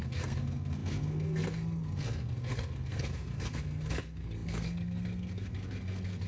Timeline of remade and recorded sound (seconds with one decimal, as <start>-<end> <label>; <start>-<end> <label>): 0.0-6.3 remade